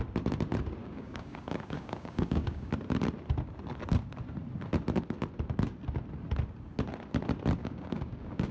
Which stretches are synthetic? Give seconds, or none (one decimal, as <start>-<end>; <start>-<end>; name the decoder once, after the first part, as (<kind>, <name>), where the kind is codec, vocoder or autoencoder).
0.8-2.7 (codec, DAC); 7.6-8.5